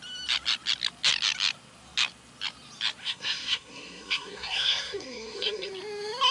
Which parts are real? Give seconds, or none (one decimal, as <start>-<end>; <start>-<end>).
0.0-3.0; 5.7-6.3